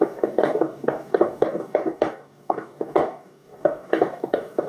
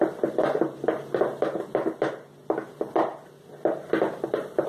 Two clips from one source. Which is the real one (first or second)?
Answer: second